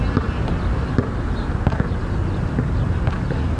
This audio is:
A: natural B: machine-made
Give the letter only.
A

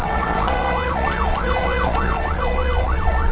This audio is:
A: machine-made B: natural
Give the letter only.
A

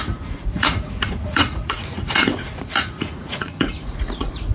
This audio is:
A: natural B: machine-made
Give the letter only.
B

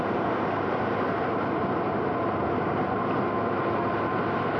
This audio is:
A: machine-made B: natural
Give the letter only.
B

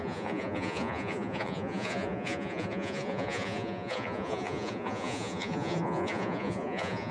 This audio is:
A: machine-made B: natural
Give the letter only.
A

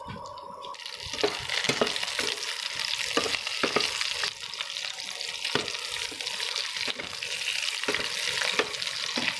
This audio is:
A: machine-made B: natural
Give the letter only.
B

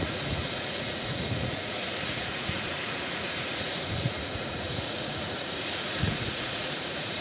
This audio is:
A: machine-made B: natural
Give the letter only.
A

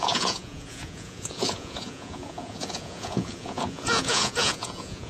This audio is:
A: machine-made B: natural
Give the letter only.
A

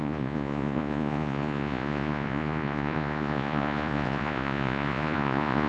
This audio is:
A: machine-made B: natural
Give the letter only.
A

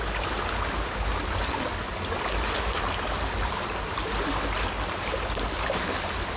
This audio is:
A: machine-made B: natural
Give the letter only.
B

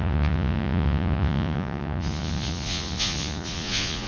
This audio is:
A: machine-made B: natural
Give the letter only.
A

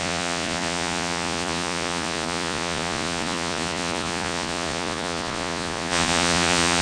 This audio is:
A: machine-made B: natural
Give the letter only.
A